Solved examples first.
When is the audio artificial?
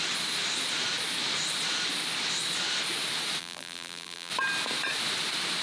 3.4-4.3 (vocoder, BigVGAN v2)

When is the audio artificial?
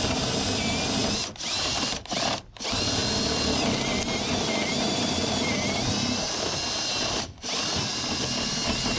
none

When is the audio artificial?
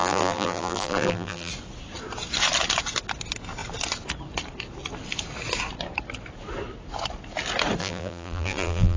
0.0-1.5 (vocoder, BigVGAN v2); 7.8-9.0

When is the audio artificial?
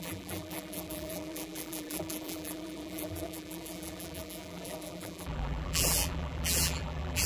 0.0-7.3 (vocoder, BigVGAN v2)